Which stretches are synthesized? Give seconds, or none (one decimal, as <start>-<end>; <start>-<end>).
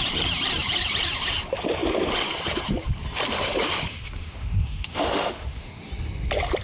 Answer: 3.9-5.9